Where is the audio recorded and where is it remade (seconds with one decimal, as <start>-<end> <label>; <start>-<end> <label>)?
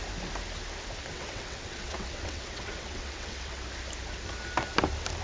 0.0-1.1 recorded; 1.1-3.6 remade; 3.6-5.2 recorded